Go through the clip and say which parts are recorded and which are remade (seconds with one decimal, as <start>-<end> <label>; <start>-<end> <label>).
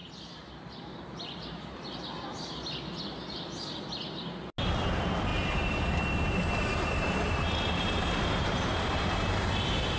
0.0-1.8 remade; 1.8-5.3 recorded; 5.3-8.9 remade; 8.9-10.0 recorded